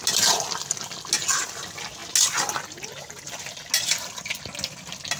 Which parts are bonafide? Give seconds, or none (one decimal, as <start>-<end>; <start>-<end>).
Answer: 0.0-5.2

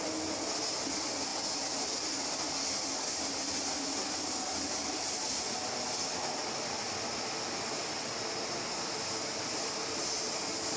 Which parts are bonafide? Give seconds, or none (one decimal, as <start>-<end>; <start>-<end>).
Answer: 0.0-10.8